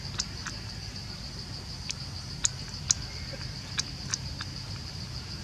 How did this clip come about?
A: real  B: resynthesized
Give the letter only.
A